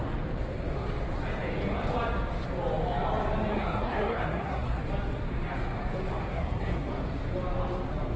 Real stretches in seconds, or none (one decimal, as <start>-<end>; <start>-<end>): 0.0-3.5; 4.8-6.3; 6.9-8.2